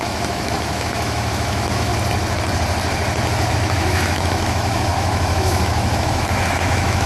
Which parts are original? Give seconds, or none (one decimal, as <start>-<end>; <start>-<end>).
1.9-3.5